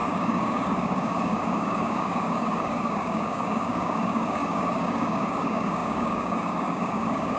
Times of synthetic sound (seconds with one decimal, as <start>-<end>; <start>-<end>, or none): 0.0-7.4